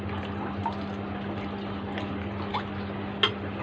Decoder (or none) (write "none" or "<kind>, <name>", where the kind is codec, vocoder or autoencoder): none